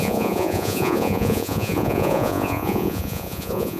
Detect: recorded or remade remade